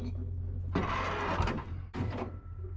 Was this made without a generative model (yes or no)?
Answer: yes